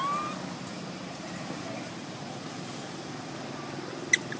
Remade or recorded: recorded